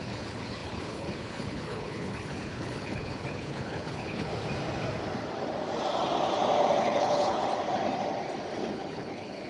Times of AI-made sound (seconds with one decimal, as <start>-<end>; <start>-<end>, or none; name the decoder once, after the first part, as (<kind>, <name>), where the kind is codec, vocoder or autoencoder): 0.0-4.3 (codec, HILCodec); 6.8-7.4; 8.7-9.5